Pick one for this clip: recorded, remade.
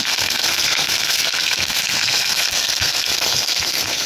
remade